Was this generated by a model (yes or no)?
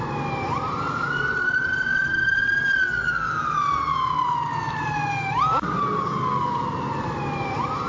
no